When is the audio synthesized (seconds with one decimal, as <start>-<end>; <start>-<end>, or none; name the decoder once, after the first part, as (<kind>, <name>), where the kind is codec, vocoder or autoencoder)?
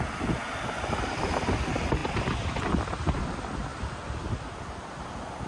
none